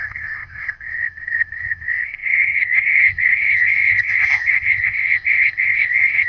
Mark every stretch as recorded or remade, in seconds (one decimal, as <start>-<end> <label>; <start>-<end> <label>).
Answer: 0.0-6.3 remade